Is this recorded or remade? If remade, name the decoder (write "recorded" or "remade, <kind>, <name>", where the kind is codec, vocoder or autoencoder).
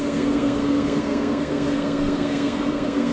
remade, codec, SNAC